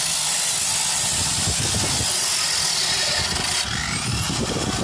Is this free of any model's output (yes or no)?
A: yes